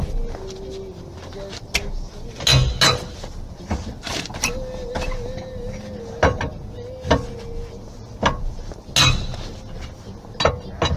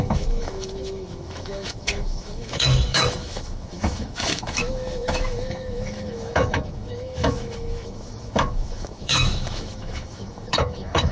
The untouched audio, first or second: first